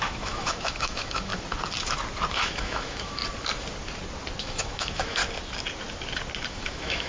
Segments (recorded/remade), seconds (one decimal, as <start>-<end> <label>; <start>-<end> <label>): 0.0-1.3 remade; 1.3-2.3 recorded; 2.3-3.2 remade; 3.2-4.4 recorded; 4.4-5.2 remade; 5.2-6.5 recorded; 6.5-7.1 remade